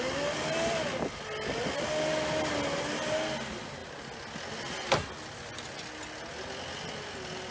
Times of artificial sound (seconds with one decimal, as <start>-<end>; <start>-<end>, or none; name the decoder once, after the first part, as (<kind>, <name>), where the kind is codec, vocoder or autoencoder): none